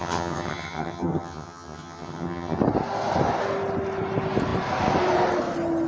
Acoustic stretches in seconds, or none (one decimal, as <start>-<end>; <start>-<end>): 2.6-5.9